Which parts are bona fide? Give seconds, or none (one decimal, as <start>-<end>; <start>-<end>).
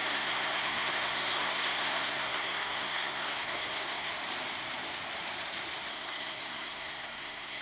4.1-5.9